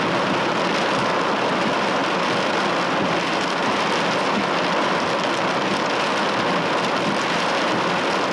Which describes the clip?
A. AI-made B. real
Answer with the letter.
B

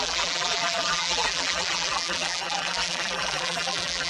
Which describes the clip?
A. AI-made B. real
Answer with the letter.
A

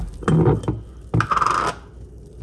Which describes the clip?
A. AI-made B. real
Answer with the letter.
B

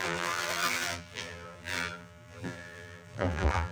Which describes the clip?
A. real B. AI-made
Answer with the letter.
B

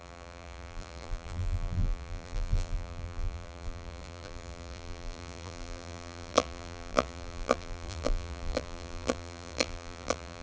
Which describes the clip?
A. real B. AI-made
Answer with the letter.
B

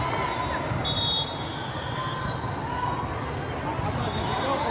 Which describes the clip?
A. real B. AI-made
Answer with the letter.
A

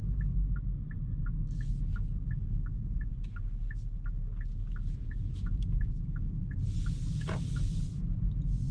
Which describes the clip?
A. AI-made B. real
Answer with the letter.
B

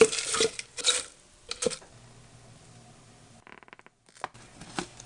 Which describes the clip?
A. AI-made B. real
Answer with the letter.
B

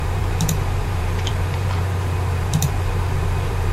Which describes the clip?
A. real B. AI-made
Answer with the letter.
B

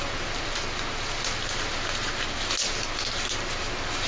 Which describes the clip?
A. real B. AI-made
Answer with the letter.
A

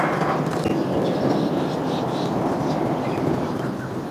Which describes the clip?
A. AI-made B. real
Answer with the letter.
B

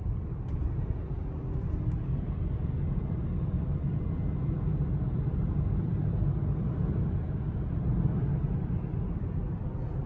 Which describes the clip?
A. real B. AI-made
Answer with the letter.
B